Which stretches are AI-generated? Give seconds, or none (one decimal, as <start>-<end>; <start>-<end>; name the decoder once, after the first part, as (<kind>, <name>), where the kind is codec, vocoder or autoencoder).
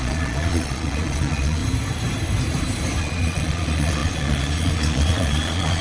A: 0.0-1.6 (vocoder, Vocos); 3.0-5.8